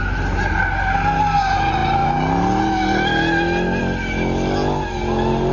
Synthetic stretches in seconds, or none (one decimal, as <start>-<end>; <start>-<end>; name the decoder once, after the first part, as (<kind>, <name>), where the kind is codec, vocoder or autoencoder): none